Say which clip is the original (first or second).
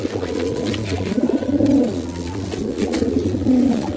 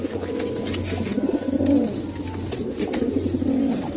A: second